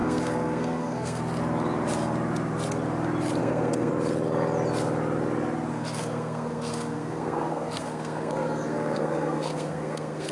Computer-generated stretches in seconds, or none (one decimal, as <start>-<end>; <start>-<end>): 0.0-1.2; 3.4-3.9; 5.7-10.3